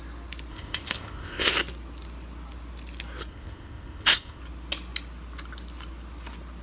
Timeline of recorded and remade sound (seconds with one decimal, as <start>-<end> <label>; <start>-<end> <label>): 0.0-0.5 recorded; 0.5-1.5 remade; 1.5-3.3 recorded; 3.3-4.4 remade; 4.4-6.6 recorded